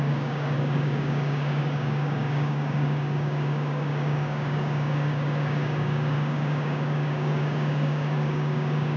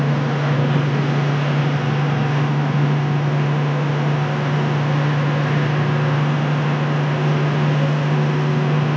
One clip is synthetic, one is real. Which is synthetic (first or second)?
first